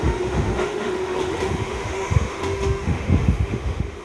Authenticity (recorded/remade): remade